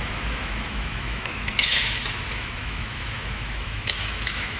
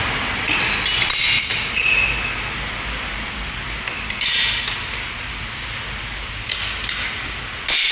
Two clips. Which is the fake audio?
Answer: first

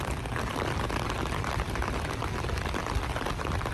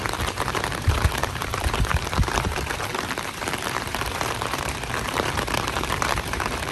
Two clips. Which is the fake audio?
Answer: second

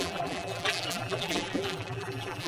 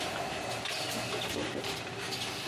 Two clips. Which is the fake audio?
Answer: first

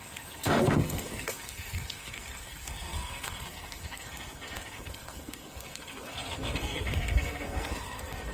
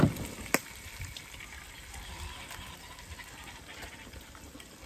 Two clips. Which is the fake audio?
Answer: first